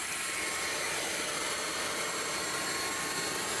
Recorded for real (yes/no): yes